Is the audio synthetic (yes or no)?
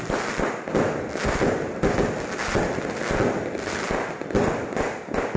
no